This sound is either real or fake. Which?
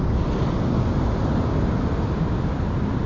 real